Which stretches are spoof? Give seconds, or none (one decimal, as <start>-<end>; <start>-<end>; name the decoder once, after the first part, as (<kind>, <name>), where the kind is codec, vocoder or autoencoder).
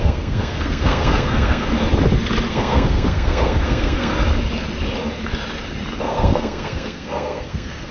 0.0-1.7 (codec, SNAC); 2.5-4.1; 6.0-7.9